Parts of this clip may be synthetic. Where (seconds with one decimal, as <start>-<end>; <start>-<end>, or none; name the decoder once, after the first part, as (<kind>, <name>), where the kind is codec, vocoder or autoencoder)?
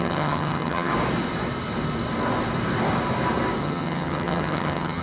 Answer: 0.0-0.9 (vocoder, HiFi-GAN); 3.6-5.0